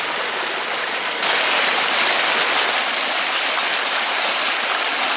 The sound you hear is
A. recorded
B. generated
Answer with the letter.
A